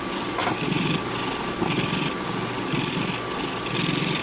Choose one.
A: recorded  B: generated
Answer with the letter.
A